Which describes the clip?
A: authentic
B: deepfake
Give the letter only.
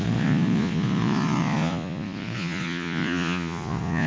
B